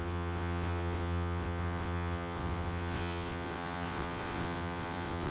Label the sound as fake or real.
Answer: fake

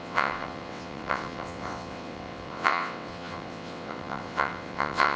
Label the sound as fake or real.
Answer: fake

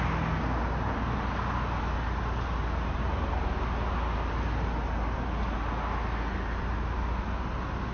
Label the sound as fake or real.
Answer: real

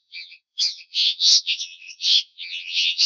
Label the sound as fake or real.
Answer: fake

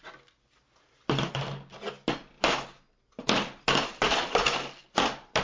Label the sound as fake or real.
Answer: real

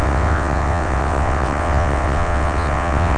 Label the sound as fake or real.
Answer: fake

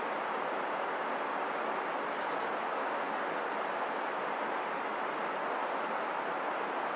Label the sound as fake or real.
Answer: real